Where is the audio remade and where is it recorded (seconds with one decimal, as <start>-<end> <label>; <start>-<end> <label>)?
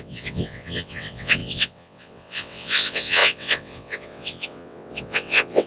0.0-5.7 remade